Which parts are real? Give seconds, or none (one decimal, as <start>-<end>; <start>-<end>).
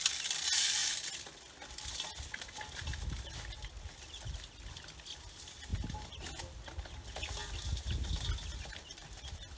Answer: 0.0-9.6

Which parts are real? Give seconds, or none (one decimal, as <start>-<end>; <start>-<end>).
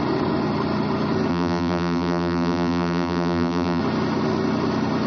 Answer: 0.0-1.3; 3.8-5.1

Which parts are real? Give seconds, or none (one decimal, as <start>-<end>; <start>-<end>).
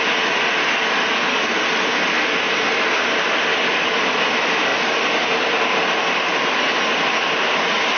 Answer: 0.0-8.0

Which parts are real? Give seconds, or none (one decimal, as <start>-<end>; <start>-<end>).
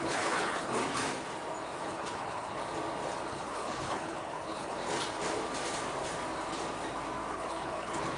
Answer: 0.8-1.8; 2.6-3.3; 4.8-7.3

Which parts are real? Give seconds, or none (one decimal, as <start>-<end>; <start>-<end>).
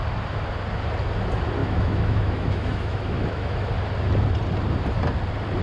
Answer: 0.0-1.6; 3.7-5.6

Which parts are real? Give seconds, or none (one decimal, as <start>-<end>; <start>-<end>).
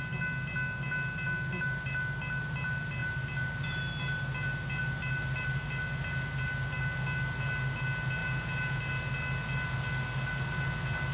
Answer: 0.0-8.2; 8.8-11.1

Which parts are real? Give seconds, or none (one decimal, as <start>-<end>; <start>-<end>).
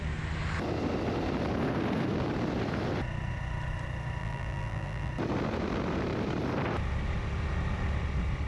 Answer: 0.0-4.2; 5.1-8.5